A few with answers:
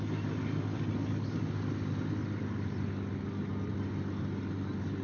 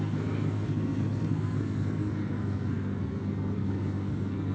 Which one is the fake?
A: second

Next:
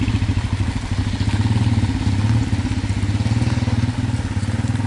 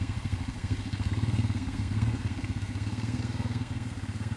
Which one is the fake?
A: second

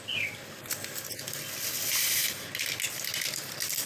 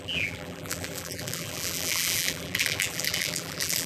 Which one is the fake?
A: second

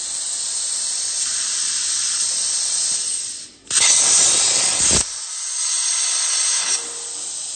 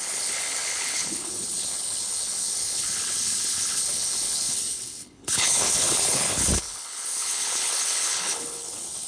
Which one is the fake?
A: second